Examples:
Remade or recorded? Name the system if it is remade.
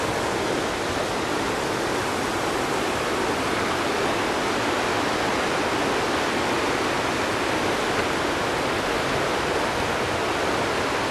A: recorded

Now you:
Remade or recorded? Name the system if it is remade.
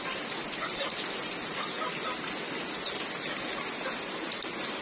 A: recorded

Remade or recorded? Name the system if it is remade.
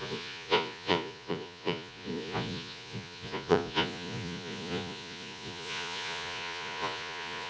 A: remade, vocoder, Vocos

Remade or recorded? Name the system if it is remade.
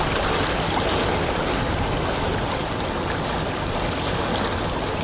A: recorded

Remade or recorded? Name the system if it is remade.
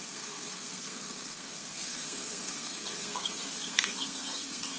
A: remade, codec, SNAC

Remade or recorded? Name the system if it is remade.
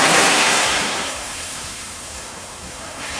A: remade, codec, SNAC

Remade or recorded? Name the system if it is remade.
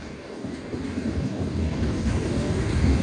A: remade, codec, DAC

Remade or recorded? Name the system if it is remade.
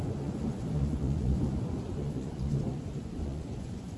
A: remade, vocoder, Vocos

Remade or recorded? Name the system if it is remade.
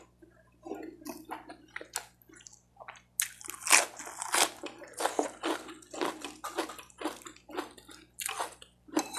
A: recorded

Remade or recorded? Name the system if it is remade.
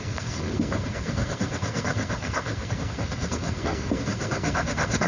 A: remade, codec, SNAC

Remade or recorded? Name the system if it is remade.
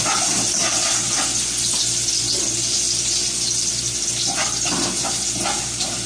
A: recorded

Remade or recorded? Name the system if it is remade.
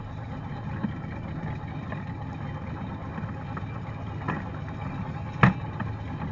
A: recorded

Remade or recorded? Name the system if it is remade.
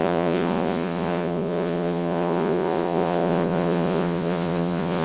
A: remade, vocoder, Vocos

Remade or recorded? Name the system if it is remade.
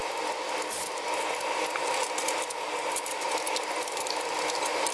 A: recorded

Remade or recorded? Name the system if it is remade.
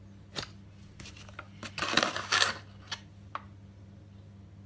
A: recorded